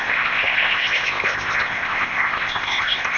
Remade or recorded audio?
remade